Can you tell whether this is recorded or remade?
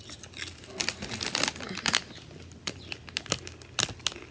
recorded